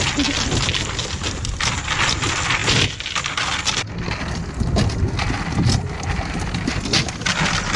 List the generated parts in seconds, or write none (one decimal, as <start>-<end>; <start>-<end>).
none